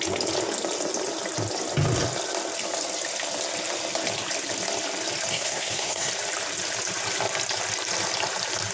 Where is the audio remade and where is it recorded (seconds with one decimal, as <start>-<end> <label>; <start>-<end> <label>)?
0.0-5.3 recorded; 5.3-6.1 remade; 6.1-8.7 recorded